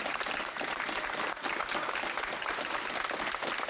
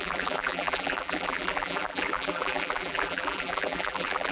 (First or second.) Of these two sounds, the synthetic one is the second